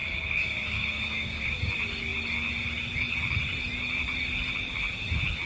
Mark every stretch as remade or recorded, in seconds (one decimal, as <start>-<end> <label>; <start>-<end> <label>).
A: 0.0-1.6 remade; 1.6-5.5 recorded